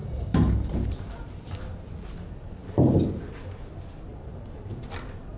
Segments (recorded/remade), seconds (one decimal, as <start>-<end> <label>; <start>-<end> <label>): 0.0-1.6 remade; 1.6-2.6 recorded; 2.6-3.2 remade; 3.2-4.1 recorded; 4.1-4.8 remade; 4.8-5.4 recorded